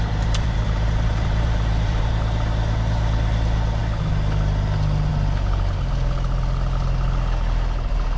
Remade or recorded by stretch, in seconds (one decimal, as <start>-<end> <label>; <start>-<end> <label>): 0.0-2.1 remade; 2.1-8.2 recorded